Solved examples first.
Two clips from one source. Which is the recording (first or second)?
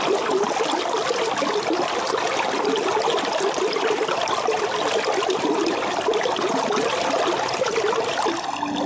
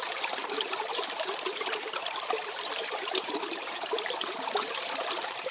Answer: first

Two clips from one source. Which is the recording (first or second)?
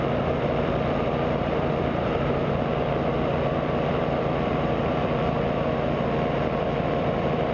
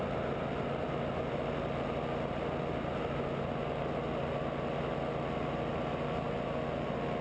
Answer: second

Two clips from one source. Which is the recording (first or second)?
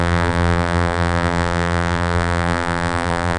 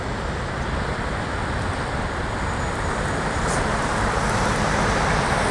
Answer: second